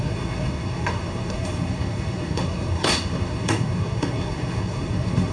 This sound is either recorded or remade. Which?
remade